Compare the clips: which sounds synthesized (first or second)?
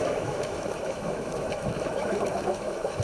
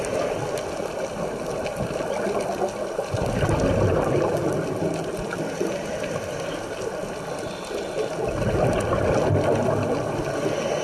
first